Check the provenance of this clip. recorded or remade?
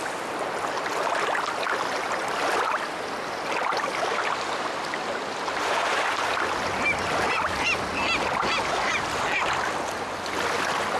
recorded